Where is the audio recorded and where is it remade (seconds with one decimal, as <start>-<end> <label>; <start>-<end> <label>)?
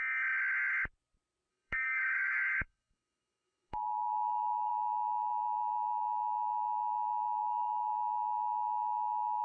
0.0-1.5 recorded; 1.5-4.7 remade; 4.7-7.4 recorded; 7.4-7.9 remade; 7.9-9.4 recorded